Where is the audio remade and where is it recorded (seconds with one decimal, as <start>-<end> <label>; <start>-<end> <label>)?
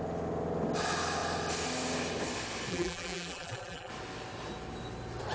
0.0-2.7 recorded; 2.7-3.9 remade; 3.9-5.3 recorded